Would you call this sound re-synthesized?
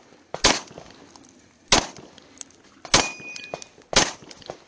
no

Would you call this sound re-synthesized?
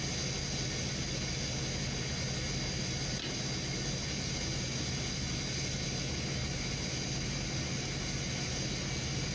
no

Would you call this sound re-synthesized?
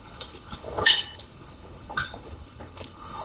yes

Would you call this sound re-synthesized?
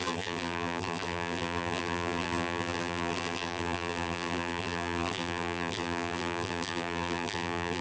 yes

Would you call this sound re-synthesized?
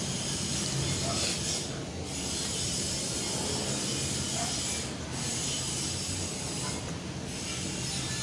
no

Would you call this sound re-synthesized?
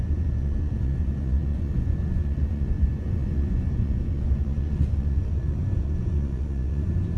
yes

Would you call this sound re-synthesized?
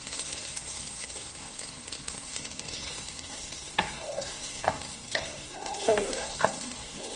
yes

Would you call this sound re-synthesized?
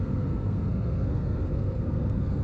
yes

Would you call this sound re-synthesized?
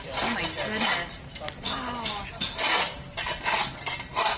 no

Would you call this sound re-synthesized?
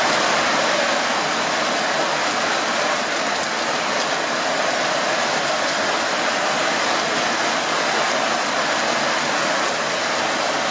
no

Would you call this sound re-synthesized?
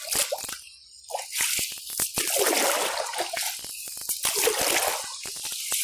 no